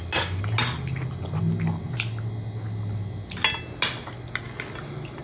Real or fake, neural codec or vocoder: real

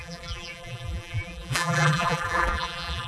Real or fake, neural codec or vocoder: fake, vocoder, BigVGAN v2